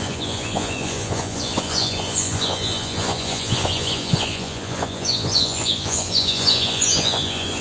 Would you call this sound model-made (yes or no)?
yes